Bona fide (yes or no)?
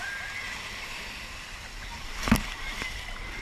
yes